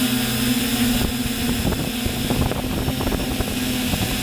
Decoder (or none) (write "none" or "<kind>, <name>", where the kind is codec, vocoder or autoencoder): none